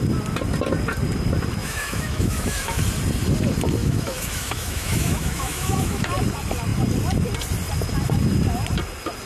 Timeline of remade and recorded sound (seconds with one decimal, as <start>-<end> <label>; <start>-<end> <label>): 0.0-1.6 recorded; 1.6-2.8 remade; 2.8-3.8 recorded; 3.8-6.1 remade; 6.1-9.3 recorded